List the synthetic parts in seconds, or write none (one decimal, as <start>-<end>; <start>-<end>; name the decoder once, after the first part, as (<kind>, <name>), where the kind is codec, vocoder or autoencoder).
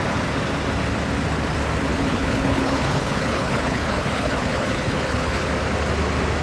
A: 1.9-5.5 (codec, HILCodec)